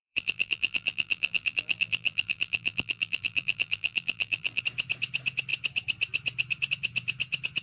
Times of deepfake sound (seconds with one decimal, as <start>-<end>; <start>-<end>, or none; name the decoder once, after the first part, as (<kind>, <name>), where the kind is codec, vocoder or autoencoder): 0.0-4.6 (vocoder, BigVGAN v2)